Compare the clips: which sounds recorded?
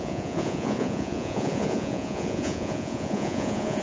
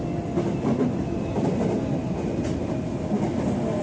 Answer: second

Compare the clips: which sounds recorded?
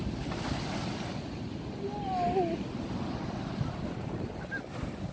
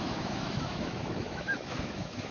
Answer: first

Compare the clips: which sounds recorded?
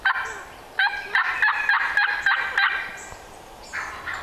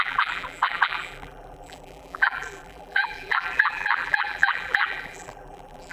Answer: first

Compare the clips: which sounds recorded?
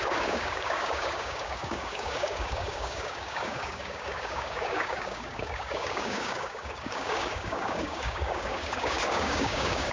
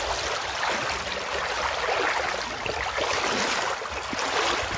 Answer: second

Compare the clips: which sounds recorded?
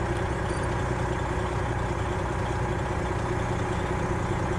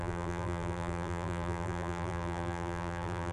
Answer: first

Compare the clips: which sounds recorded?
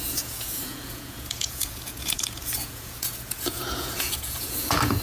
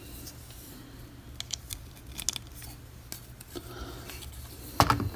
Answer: second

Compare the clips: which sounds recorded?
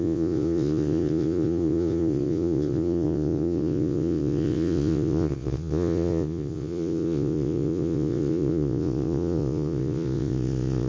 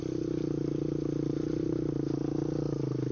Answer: second